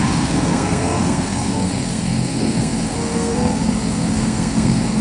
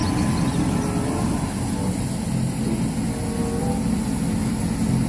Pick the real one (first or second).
second